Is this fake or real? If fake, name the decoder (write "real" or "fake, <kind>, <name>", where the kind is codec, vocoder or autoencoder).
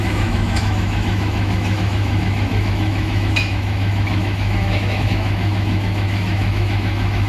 fake, autoencoder, DAC-VAE